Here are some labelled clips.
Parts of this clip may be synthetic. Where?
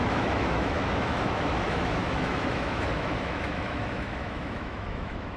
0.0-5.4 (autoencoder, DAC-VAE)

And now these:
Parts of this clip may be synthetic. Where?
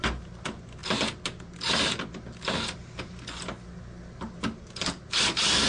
none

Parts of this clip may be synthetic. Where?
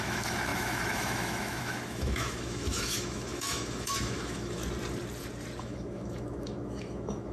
0.0-4.6 (autoencoder, DAC-VAE); 5.6-7.3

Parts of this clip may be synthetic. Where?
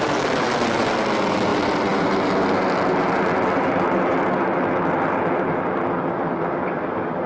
none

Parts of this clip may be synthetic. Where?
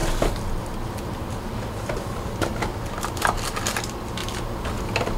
none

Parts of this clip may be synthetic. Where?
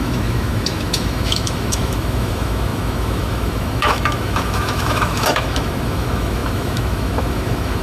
0.0-7.8 (autoencoder, DAC-VAE)